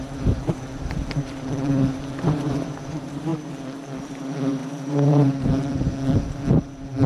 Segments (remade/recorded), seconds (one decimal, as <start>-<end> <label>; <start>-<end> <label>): 0.0-3.3 remade; 3.3-4.0 recorded; 4.0-7.1 remade

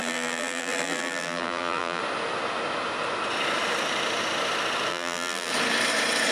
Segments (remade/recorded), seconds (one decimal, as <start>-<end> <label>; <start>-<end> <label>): 0.0-2.0 remade; 2.0-4.9 recorded; 4.9-5.5 remade; 5.5-6.3 recorded

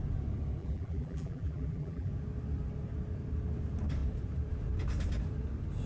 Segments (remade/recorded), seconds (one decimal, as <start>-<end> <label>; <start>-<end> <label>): 0.0-0.6 recorded; 0.6-2.1 remade; 2.1-5.9 recorded

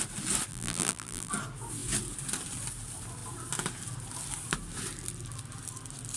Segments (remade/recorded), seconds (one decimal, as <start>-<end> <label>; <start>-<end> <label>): 0.0-0.5 recorded; 0.5-1.3 remade; 1.3-6.2 recorded